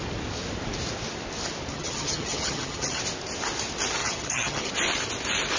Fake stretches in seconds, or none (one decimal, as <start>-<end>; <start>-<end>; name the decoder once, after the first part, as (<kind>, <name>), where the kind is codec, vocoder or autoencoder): 1.7-3.0 (vocoder, HiFi-GAN); 4.0-4.7

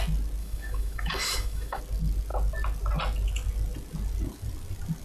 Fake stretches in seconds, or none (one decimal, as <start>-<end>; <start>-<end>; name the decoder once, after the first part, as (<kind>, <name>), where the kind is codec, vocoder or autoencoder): 0.4-1.8 (autoencoder, DAC-VAE)

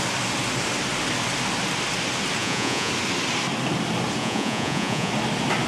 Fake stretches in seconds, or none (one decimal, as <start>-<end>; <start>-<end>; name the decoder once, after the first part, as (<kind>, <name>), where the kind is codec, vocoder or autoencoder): 2.4-2.9 (vocoder, Vocos); 4.2-5.1

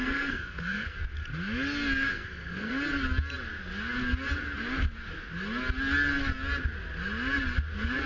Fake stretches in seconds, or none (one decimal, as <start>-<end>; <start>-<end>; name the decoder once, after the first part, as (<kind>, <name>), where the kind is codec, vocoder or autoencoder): 0.0-1.0 (codec, SNAC); 2.1-2.7

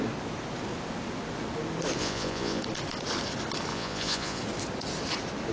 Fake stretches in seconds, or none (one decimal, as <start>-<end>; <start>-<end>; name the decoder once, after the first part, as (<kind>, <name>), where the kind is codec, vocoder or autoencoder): 2.0-2.6 (vocoder, Vocos); 3.7-4.4

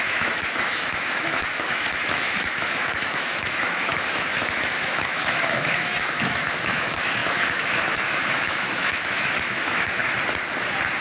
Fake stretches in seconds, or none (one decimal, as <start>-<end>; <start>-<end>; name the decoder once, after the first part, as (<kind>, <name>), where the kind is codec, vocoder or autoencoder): 0.0-10.0 (autoencoder, DAC-VAE)

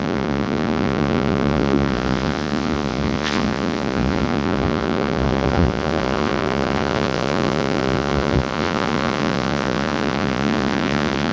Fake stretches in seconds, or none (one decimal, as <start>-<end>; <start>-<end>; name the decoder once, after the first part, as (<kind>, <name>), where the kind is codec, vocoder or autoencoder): 0.0-11.3 (vocoder, Vocos)

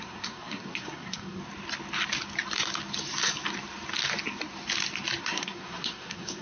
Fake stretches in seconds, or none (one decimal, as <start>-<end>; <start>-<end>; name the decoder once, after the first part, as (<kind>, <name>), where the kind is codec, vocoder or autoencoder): 0.0-1.4 (codec, SNAC); 5.2-6.4